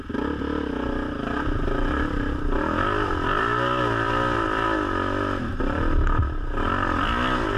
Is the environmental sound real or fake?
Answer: real